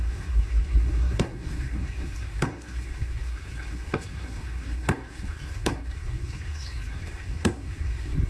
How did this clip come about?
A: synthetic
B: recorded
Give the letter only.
A